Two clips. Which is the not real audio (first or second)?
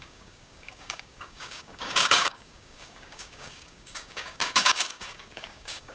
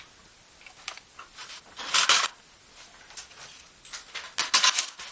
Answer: first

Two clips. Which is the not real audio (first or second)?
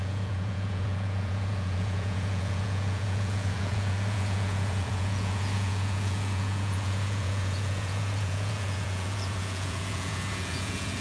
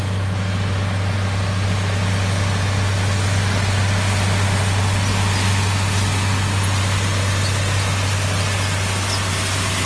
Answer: first